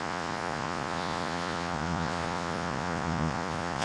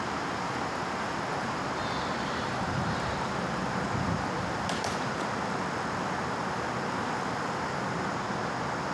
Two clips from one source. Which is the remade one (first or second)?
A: first